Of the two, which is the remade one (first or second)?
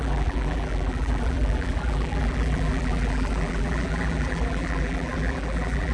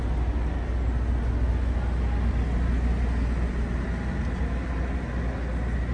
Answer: first